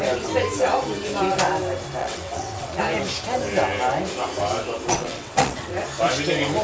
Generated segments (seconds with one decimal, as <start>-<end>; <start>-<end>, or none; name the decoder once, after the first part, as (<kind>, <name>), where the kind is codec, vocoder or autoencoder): 2.0-2.8 (vocoder, WaveNeXt); 4.9-5.7